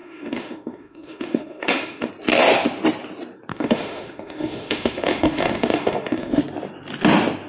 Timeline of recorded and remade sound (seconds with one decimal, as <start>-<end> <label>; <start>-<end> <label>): 0.0-2.1 remade; 2.1-3.5 recorded; 3.5-6.4 remade; 6.4-7.5 recorded